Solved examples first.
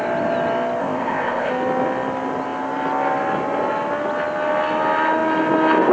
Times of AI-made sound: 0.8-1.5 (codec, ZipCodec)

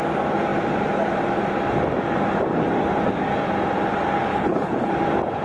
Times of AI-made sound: 4.3-4.9 (codec, HILCodec)